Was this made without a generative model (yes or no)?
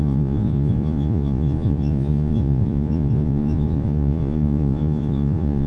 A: no